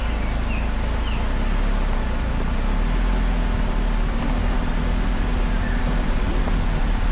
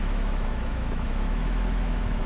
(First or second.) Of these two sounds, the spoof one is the second